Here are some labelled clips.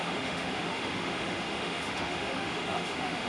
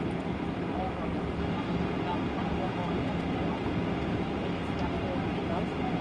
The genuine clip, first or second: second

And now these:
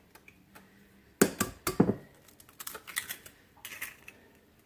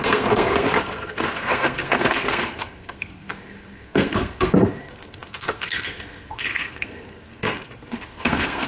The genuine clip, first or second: first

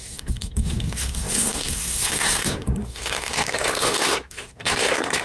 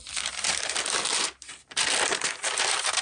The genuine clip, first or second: second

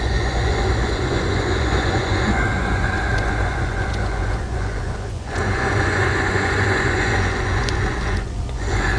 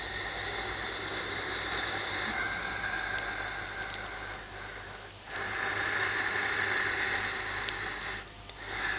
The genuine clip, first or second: second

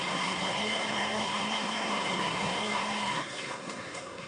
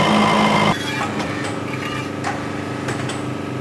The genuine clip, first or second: second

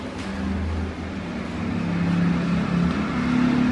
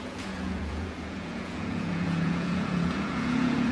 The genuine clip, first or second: first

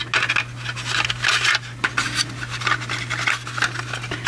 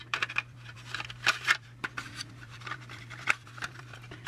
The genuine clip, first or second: first